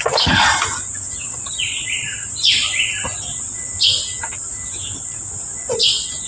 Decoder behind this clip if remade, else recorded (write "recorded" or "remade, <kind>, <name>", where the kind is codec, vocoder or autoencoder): recorded